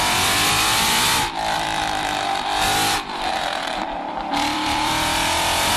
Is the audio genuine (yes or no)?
no